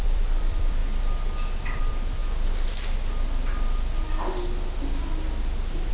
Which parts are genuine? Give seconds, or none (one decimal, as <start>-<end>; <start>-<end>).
0.8-1.8; 2.2-5.9